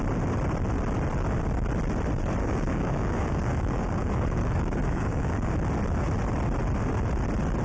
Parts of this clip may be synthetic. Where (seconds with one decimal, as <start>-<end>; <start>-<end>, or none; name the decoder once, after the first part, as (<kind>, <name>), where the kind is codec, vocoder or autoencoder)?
2.4-5.5 (codec, DAC)